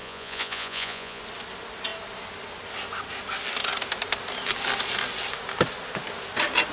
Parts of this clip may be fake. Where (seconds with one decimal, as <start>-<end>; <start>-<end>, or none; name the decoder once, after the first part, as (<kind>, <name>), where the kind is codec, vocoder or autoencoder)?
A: 0.0-1.2 (vocoder, Vocos)

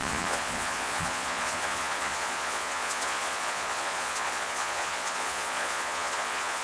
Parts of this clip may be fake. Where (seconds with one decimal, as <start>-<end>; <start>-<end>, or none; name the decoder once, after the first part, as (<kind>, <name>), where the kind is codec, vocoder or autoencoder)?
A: 0.0-6.6 (vocoder, Vocos)

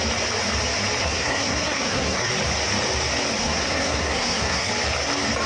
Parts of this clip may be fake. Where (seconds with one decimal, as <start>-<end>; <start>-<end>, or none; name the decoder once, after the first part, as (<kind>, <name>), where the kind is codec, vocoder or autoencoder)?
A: 1.0-2.3 (codec, SNAC); 3.4-4.7

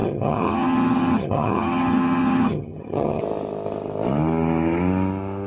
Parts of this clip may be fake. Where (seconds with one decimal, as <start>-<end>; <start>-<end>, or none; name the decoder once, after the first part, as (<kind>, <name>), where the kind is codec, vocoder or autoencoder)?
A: 0.0-3.2 (vocoder, HiFi-GAN)